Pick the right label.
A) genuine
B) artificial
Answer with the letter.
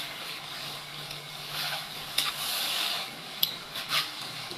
B